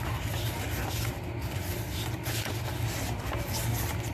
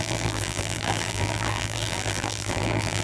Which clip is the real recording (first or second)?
first